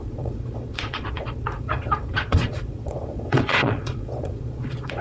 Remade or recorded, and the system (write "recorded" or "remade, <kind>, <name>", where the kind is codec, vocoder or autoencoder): remade, vocoder, Vocos